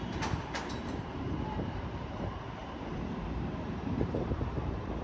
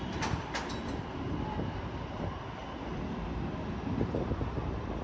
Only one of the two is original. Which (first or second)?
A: second